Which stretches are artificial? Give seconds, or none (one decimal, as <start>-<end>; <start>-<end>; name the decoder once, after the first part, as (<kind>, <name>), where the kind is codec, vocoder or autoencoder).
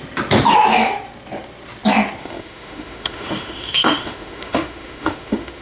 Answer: 2.2-5.6 (autoencoder, DAC-VAE)